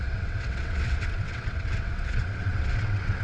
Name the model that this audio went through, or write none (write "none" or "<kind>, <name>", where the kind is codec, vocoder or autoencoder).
vocoder, WaveNeXt